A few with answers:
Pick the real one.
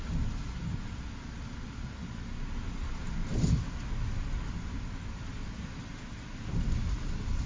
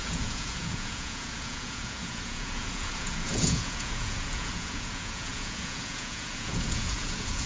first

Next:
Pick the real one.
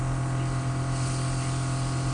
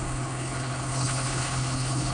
first